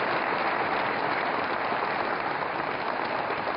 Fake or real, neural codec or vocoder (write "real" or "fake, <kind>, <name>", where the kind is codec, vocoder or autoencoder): real